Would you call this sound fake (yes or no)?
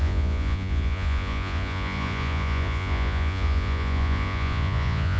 yes